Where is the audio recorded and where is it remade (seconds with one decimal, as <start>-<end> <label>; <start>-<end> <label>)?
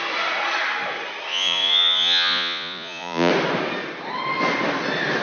0.0-1.3 recorded; 1.3-3.3 remade; 3.3-5.2 recorded